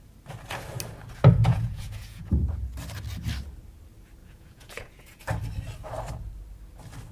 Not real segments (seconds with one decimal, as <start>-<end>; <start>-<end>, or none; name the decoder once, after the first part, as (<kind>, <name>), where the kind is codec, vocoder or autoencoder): 1.4-2.3 (vocoder, Vocos); 4.2-5.2